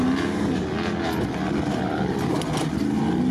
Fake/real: real